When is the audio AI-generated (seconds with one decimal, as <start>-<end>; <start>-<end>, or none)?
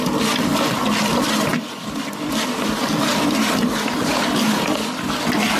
none